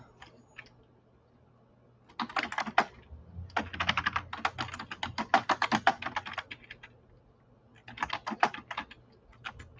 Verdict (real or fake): real